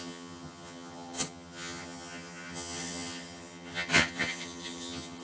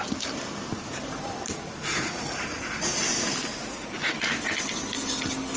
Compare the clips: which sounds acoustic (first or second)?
second